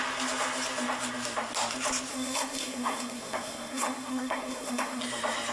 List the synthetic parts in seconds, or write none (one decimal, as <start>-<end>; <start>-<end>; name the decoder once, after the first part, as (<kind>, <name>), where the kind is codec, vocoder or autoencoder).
2.1-5.0 (codec, SNAC)